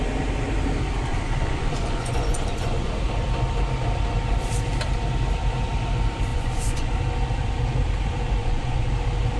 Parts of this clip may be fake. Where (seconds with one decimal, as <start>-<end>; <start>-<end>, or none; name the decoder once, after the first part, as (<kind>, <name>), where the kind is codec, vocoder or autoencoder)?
1.1-2.9 (vocoder, Vocos); 6.3-6.9; 8.4-8.9